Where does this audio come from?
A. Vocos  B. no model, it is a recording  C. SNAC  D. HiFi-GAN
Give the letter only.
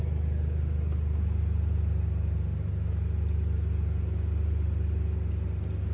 B